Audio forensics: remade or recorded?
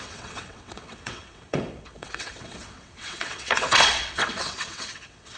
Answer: remade